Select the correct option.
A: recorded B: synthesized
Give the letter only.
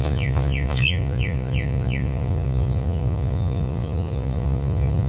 B